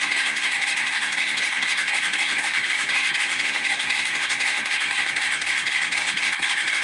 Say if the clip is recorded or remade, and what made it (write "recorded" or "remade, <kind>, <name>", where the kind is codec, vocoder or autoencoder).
remade, codec, SNAC